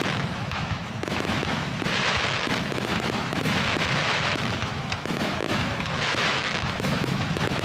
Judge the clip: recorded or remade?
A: remade